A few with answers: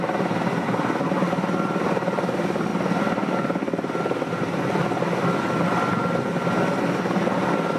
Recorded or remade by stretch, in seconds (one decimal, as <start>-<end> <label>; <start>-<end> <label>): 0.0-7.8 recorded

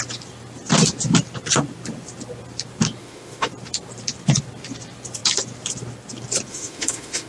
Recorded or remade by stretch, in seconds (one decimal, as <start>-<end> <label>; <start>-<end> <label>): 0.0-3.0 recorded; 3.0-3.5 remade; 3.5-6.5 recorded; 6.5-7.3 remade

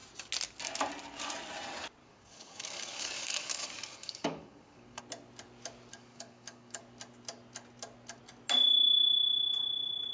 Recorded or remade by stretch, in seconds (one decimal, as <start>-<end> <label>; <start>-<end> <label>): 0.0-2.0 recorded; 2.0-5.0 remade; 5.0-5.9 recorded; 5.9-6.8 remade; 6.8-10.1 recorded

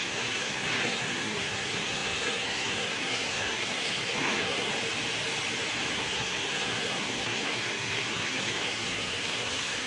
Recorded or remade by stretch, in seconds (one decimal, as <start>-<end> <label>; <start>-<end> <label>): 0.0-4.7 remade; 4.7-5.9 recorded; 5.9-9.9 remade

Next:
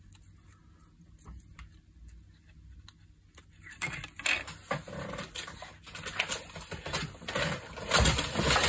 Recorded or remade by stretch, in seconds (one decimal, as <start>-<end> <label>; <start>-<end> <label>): 0.0-8.7 recorded

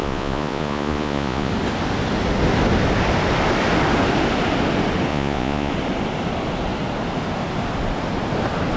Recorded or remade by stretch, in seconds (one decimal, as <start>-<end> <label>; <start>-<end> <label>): 0.0-1.5 remade; 1.5-5.1 recorded; 5.1-5.7 remade; 5.7-8.8 recorded